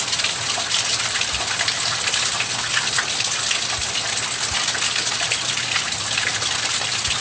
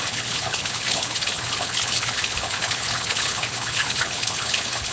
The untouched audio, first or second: first